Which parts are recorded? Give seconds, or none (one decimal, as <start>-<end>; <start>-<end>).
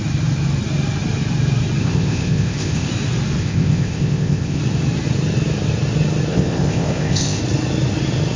0.0-1.8; 2.9-3.4; 4.6-6.3; 7.4-8.4